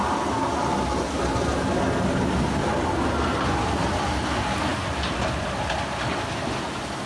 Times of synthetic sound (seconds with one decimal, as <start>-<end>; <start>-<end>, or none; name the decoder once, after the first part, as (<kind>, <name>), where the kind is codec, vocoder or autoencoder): none